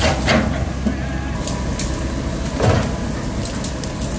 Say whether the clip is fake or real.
real